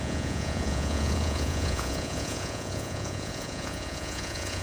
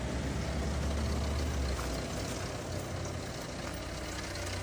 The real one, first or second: second